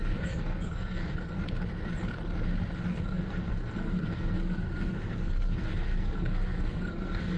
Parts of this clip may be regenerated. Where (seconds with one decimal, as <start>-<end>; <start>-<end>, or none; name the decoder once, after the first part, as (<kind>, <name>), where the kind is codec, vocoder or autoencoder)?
0.0-1.4 (codec, SNAC); 2.9-7.4